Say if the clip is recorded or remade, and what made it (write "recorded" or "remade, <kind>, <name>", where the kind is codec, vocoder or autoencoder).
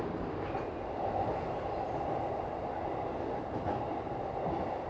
recorded